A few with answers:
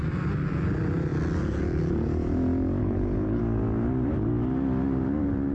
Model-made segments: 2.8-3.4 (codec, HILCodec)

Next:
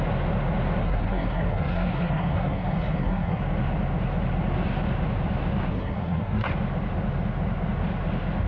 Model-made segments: 0.8-3.4 (codec, SNAC); 5.7-6.5